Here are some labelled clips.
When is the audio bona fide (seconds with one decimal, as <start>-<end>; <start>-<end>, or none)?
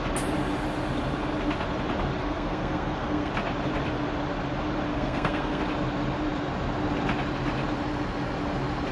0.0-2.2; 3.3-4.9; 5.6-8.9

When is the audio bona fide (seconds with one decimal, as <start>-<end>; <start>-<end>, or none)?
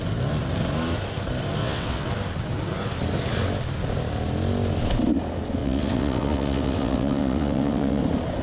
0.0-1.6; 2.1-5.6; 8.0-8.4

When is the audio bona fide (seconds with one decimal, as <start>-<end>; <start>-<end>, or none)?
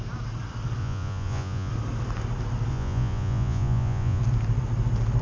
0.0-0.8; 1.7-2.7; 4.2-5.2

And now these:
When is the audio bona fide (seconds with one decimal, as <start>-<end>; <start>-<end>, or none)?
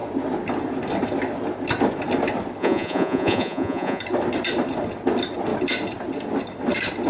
0.0-2.6; 4.0-7.1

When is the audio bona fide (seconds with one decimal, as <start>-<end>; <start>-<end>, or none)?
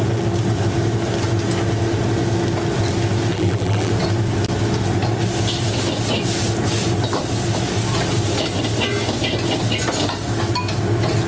0.0-3.3; 3.9-11.3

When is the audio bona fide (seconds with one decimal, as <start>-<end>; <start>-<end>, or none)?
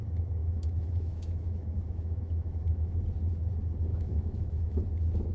0.0-0.4; 3.0-3.9; 4.8-5.3